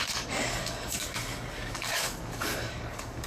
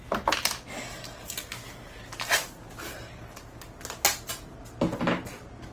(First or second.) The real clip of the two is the second